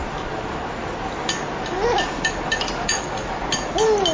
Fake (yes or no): no